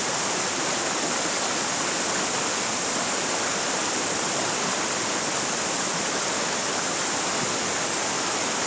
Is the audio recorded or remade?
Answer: recorded